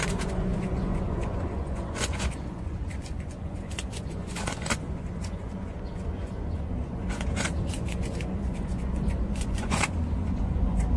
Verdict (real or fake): fake